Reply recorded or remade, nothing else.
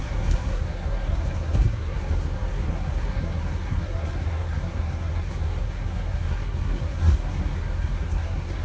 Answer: remade